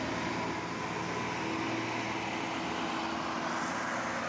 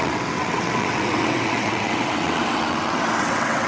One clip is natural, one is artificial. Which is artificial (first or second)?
second